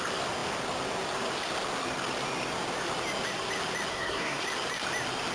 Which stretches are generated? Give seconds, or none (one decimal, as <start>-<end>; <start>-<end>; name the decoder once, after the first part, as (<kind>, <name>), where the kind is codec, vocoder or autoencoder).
3.9-4.4 (codec, SNAC)